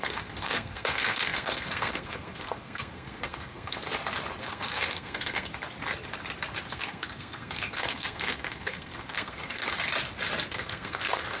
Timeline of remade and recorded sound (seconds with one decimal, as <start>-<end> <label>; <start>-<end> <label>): 0.0-3.8 remade; 3.8-4.4 recorded; 4.4-5.5 remade; 5.5-6.7 recorded; 6.7-9.6 remade; 9.6-10.5 recorded; 10.5-11.4 remade